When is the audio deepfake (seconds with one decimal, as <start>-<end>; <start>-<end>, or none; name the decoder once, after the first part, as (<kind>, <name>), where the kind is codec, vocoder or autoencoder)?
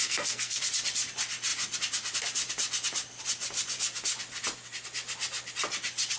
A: 0.0-0.6 (codec, SNAC)